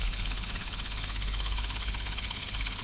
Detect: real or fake fake